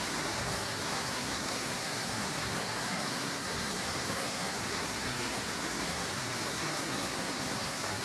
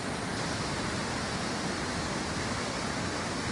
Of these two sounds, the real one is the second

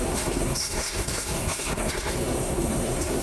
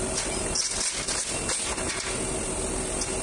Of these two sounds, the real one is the second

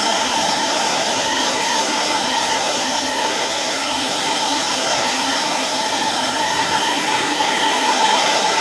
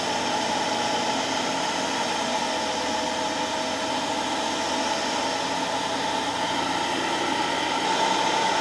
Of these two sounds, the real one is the second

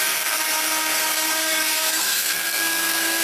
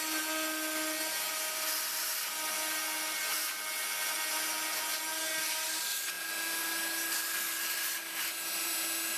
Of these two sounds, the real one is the second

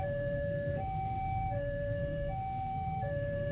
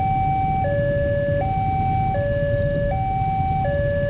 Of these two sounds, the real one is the second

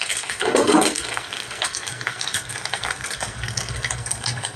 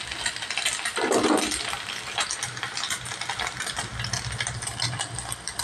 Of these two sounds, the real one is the second